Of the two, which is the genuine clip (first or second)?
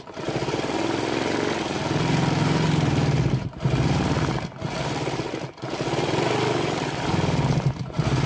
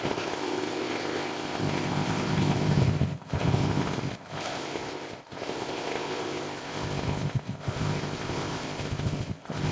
first